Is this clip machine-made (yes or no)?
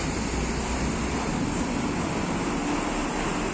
no